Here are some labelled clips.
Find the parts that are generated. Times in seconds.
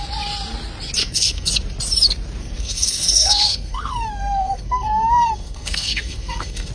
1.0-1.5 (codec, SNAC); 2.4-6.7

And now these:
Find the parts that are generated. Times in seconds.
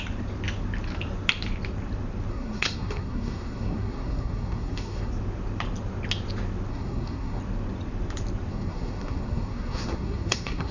2.3-5.1 (codec, SNAC); 6.7-7.4; 8.5-10.7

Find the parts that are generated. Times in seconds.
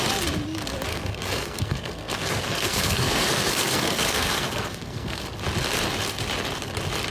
0.9-5.2 (codec, SNAC)